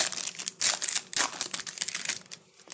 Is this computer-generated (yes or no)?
no